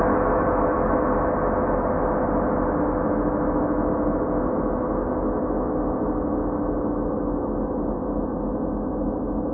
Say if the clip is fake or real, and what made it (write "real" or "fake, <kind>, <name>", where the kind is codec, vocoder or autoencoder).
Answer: real